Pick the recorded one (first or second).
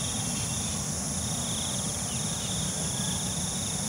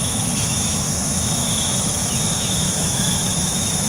first